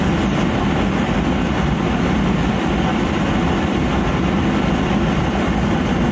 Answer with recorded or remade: recorded